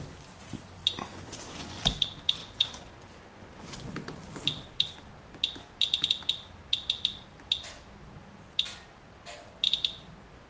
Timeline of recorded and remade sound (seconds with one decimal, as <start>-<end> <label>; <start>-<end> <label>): 0.0-0.8 recorded; 0.8-1.8 remade; 1.8-2.4 recorded; 2.4-4.3 remade; 4.3-10.5 recorded